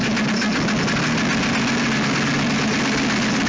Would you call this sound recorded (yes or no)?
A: yes